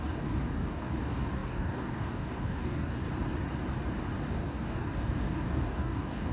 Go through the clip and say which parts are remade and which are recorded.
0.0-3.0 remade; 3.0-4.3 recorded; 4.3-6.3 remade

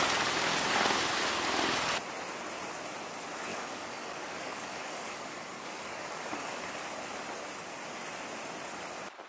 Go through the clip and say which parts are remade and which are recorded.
0.0-3.5 recorded; 3.5-6.7 remade; 6.7-9.3 recorded

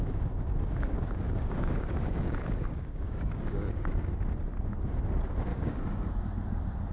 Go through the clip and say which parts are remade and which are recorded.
0.0-4.1 remade; 4.1-5.5 recorded; 5.5-6.1 remade; 6.1-6.9 recorded

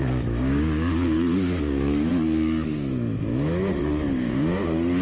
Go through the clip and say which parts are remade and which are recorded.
0.0-2.1 remade; 2.1-3.8 recorded; 3.8-5.0 remade

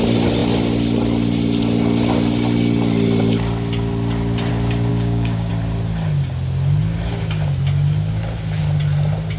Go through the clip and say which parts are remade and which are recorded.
0.0-4.9 recorded; 4.9-5.5 remade; 5.5-9.4 recorded

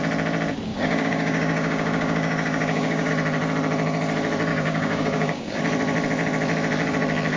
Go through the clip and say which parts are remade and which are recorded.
0.0-0.7 recorded; 0.7-3.1 remade; 3.1-4.5 recorded; 4.5-5.6 remade; 5.6-7.4 recorded

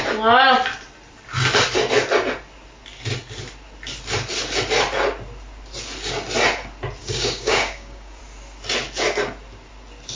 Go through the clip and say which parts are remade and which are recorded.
0.0-7.0 recorded; 7.0-8.2 remade; 8.2-10.2 recorded